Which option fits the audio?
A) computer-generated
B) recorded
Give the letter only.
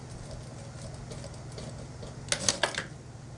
B